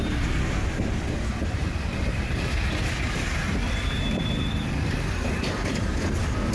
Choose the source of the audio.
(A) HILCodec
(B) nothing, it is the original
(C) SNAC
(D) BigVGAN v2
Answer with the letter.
D